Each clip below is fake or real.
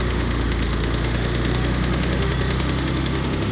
fake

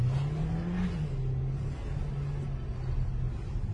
real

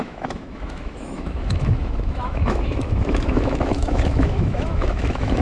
fake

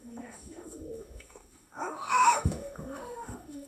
fake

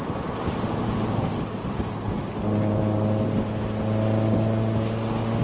real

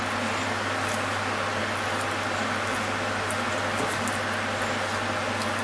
real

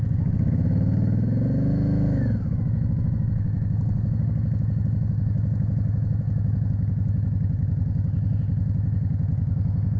fake